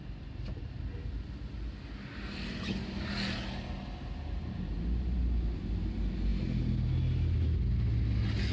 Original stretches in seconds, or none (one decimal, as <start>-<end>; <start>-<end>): 0.0-8.5